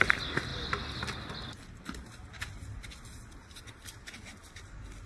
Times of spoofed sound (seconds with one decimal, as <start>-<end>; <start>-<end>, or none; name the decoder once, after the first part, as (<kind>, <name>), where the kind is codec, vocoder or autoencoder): none